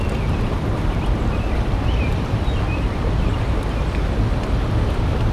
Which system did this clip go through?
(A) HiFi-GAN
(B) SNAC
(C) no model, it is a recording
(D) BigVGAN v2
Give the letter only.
C